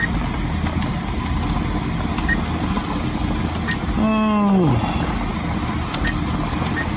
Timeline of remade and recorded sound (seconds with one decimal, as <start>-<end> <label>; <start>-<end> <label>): 0.0-7.0 recorded